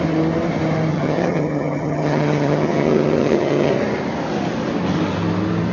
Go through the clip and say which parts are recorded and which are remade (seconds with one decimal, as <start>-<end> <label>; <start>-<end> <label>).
0.0-0.9 recorded; 0.9-3.7 remade; 3.7-5.7 recorded